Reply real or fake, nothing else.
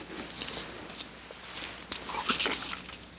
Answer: real